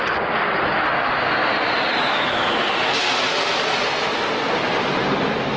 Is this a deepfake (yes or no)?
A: no